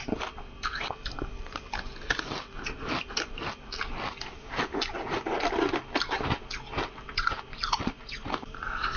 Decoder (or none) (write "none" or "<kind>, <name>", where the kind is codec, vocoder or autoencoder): none